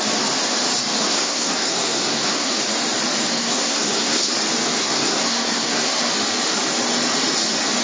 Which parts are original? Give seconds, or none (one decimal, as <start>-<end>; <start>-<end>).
0.0-1.0; 2.5-3.3; 4.3-4.8; 6.1-7.8